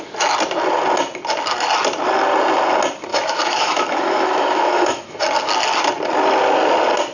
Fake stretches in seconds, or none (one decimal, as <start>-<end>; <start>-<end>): 3.1-5.2